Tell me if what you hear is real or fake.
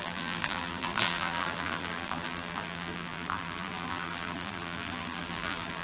fake